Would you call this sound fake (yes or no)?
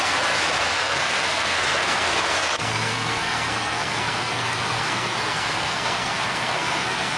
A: yes